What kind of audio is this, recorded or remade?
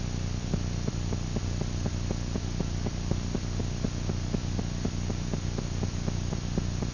recorded